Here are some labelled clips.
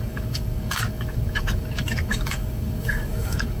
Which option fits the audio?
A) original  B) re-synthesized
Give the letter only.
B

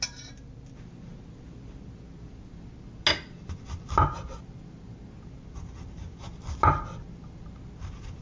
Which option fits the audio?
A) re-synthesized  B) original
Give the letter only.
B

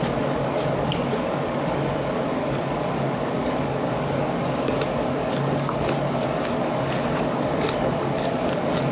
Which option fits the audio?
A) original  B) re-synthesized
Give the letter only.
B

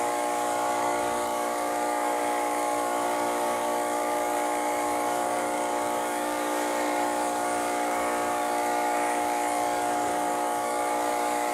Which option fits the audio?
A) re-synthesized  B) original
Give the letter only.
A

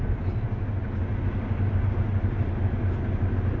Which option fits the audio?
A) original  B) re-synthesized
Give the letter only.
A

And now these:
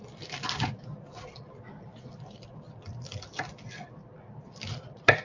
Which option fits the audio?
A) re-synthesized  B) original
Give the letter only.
B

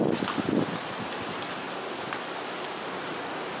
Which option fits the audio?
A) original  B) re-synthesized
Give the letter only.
A